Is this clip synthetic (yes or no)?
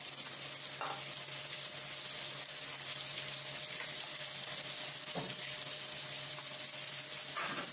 no